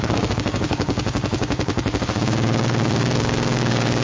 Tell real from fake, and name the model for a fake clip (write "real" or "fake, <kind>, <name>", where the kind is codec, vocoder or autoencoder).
fake, codec, DAC